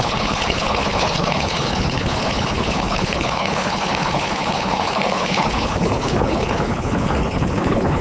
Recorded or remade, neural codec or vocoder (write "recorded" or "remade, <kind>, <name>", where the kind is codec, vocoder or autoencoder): remade, codec, HILCodec